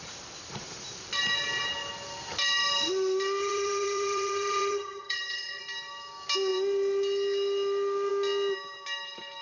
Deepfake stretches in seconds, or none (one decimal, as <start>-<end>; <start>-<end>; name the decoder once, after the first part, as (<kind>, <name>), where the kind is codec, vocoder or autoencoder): 3.4-5.6 (vocoder, HiFi-GAN)